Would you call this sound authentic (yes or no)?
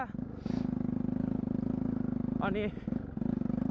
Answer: yes